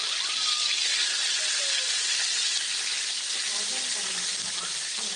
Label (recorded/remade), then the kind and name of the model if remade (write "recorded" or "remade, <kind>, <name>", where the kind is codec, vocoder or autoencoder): recorded